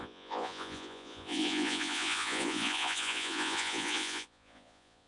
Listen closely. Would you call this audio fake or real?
fake